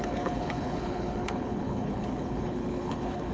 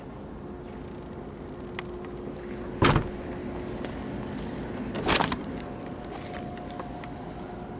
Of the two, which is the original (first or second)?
second